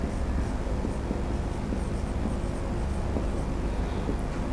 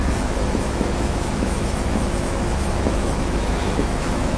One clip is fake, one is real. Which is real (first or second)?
first